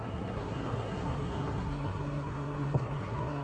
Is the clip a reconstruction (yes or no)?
yes